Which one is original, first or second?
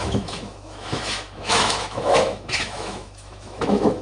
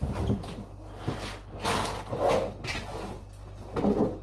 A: second